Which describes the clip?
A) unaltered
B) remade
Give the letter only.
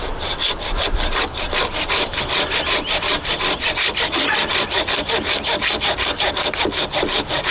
A